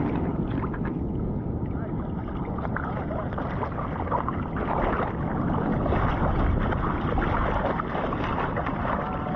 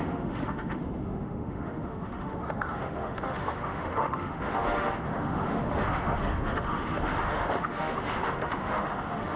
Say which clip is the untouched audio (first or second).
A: first